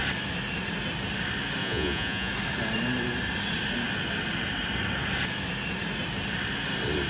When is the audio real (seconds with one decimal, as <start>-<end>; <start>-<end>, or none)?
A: 0.0-1.6; 2.3-7.1